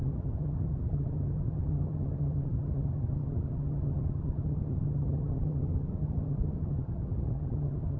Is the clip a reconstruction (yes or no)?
yes